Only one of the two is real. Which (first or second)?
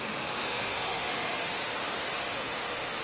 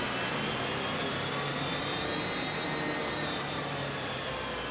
second